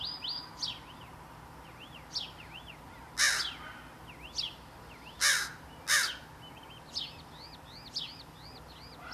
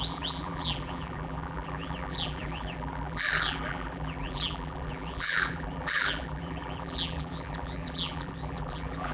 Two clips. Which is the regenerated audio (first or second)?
second